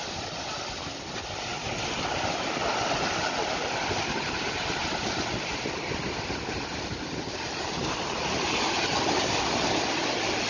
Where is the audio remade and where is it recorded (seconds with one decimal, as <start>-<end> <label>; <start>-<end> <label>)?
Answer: 0.0-10.5 recorded